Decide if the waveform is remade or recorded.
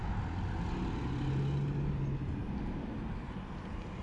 recorded